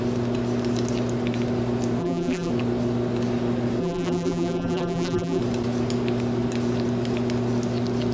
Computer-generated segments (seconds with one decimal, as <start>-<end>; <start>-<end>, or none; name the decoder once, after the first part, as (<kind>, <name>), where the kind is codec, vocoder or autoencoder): 2.0-2.5 (vocoder, BigVGAN v2); 3.8-5.4